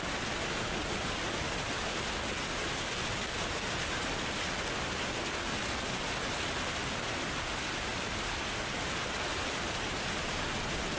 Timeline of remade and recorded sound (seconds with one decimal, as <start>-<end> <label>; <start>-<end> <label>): 0.0-11.0 recorded

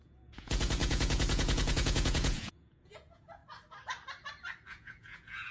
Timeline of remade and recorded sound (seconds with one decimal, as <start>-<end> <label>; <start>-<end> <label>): 0.0-3.4 remade; 3.4-4.7 recorded; 4.7-5.5 remade

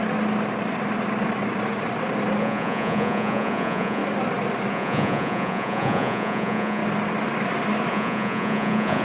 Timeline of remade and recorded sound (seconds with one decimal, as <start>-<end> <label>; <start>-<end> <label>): 0.0-2.4 recorded; 2.4-4.0 remade; 4.0-4.7 recorded; 4.7-6.8 remade; 6.8-7.9 recorded; 7.9-9.0 remade

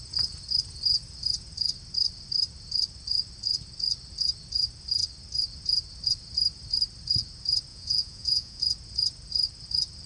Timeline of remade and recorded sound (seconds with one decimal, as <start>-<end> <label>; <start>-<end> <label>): 0.0-7.7 recorded; 7.7-8.6 remade; 8.6-10.1 recorded